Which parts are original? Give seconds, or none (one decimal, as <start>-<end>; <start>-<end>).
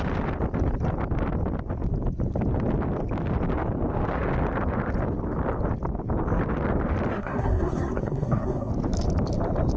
0.0-7.1; 8.7-9.8